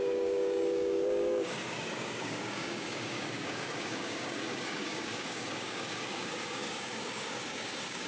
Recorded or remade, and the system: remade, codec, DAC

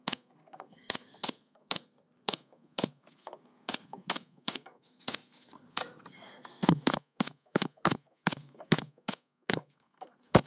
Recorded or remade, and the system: remade, codec, SNAC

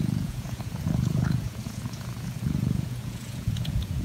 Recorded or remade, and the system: remade, vocoder, Vocos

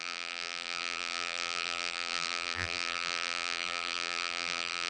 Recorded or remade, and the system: remade, vocoder, BigVGAN v2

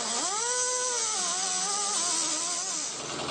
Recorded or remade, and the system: recorded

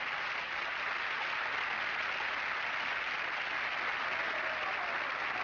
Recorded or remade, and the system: recorded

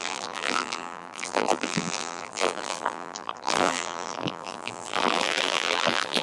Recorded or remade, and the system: remade, vocoder, BigVGAN v2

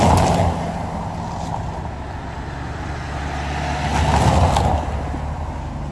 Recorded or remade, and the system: recorded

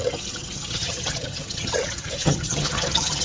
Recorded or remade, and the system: remade, vocoder, HiFi-GAN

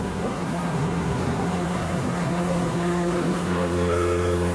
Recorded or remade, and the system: remade, codec, SNAC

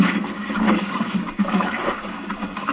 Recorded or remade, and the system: remade, codec, DAC